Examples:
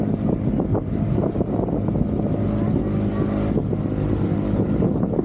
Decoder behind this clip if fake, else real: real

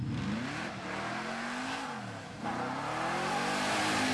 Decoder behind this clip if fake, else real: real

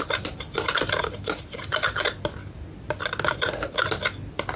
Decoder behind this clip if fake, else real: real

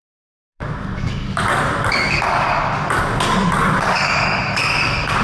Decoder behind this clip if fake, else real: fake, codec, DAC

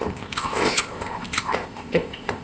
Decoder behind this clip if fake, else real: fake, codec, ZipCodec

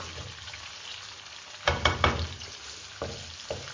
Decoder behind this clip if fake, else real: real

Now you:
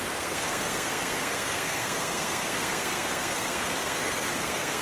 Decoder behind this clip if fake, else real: fake, codec, SNAC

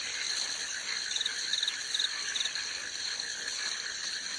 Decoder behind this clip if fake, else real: real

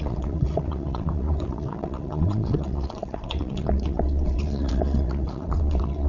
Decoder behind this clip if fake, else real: fake, vocoder, WaveNeXt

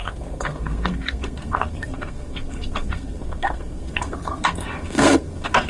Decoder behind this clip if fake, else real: fake, codec, SNAC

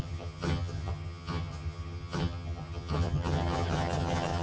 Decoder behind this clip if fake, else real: fake, vocoder, HiFi-GAN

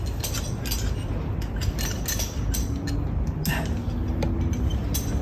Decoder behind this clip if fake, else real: real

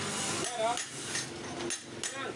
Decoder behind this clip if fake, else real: real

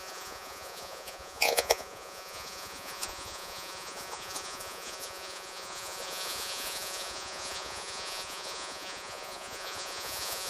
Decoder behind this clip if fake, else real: fake, vocoder, Vocos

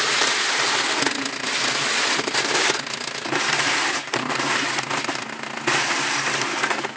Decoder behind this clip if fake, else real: real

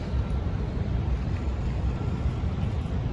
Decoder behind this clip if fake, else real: fake, vocoder, BigVGAN v2